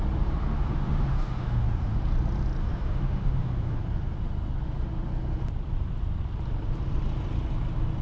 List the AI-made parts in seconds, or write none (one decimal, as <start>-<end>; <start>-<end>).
0.5-2.0; 2.6-3.8